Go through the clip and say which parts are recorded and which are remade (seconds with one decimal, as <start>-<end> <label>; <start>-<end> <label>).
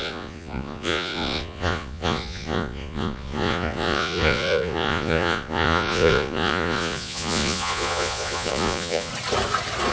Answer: 0.0-9.1 remade; 9.1-9.9 recorded